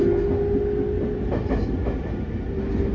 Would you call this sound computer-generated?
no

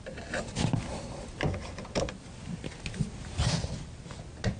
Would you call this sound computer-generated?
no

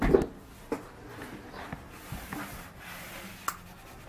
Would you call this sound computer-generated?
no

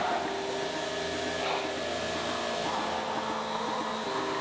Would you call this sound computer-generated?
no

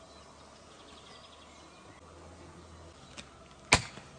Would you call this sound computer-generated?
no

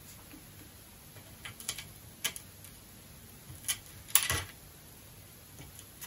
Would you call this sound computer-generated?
no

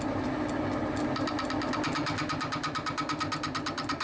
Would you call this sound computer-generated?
no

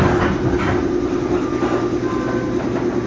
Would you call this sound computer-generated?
no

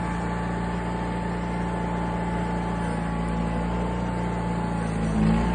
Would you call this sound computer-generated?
no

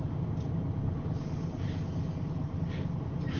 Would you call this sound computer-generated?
no